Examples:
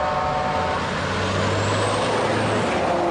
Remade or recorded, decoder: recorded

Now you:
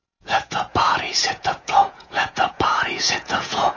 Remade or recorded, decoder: remade, vocoder, Vocos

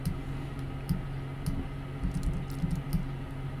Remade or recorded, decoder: recorded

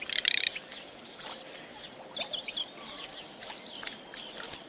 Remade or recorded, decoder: recorded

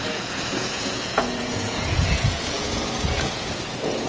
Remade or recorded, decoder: remade, vocoder, Vocos